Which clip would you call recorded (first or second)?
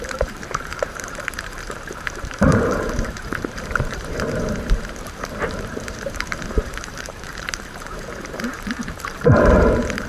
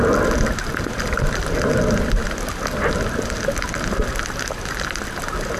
second